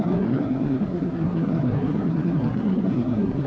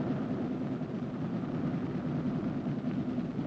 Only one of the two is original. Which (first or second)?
second